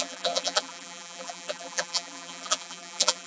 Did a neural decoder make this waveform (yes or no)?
yes